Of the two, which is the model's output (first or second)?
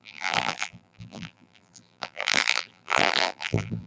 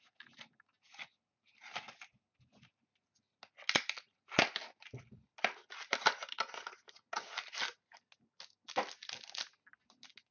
first